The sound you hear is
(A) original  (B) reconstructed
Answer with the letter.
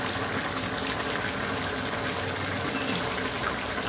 A